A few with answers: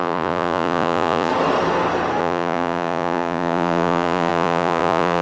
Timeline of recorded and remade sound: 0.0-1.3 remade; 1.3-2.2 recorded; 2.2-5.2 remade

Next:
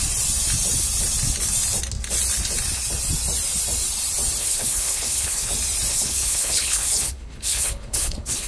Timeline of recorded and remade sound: 0.0-4.4 recorded; 4.4-5.5 remade; 5.5-5.9 recorded; 5.9-8.5 remade

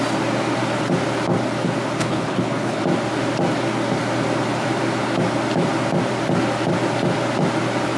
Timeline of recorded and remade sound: 0.0-2.0 recorded; 2.0-2.8 remade; 2.8-8.0 recorded

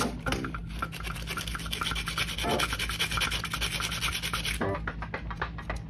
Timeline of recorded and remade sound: 0.0-5.9 recorded

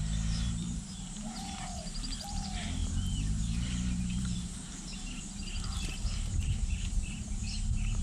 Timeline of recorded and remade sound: 0.0-8.0 remade

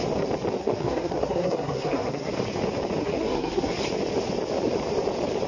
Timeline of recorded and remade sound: 0.0-0.6 recorded; 0.6-2.3 remade; 2.3-3.0 recorded; 3.0-3.7 remade; 3.7-5.5 recorded